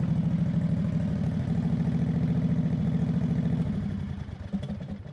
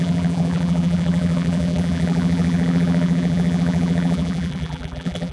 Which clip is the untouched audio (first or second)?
first